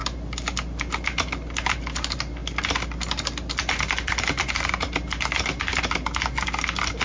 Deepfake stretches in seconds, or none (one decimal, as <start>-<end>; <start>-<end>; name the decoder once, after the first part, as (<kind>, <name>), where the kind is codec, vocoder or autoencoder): none